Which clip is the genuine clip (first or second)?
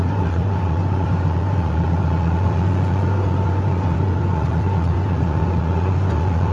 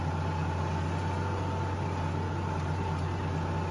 second